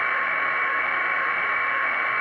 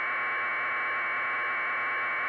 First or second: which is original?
second